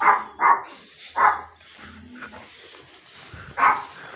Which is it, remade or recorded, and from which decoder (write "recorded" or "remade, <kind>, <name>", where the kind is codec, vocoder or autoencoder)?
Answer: remade, vocoder, BigVGAN v2